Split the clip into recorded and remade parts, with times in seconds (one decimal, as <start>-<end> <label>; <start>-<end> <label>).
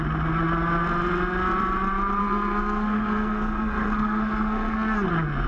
0.0-2.2 recorded; 2.2-5.1 remade; 5.1-5.5 recorded